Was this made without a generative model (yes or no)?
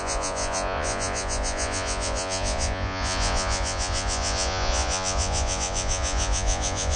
no